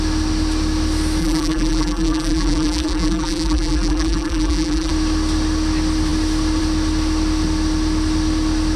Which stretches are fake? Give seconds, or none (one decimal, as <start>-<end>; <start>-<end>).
1.2-4.9